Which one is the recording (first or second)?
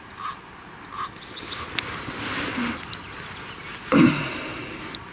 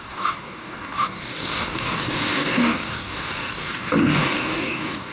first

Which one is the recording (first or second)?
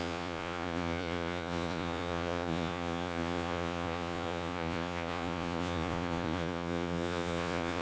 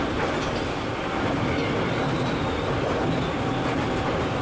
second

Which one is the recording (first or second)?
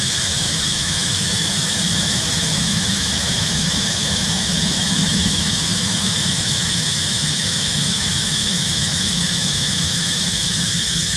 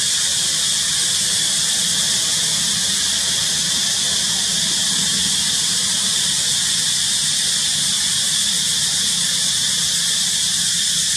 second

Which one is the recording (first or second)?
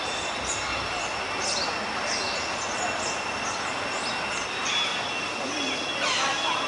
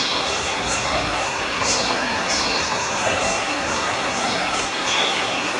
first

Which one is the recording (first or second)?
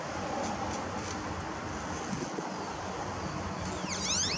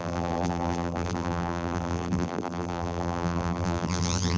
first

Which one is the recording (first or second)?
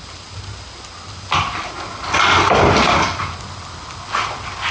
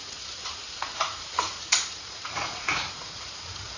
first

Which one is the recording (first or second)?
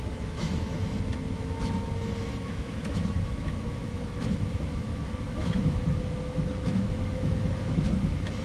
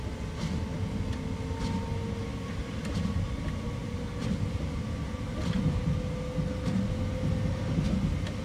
second